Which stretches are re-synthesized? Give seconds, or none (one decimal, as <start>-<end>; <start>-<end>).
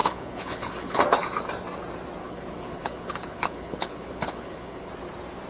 0.0-1.0; 2.2-4.9